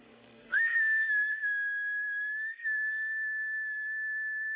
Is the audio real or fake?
fake